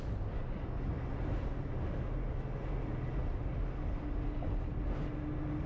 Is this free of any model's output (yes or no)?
yes